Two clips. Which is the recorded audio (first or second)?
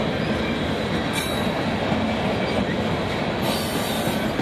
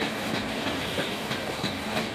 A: first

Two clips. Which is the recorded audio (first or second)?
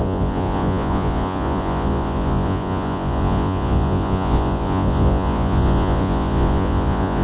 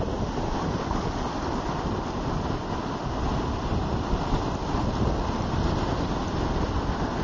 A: second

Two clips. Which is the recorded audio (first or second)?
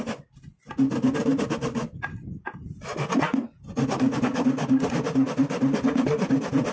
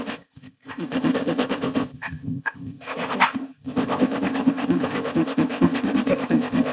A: first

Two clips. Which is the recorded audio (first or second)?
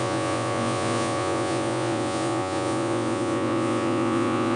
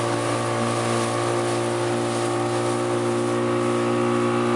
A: second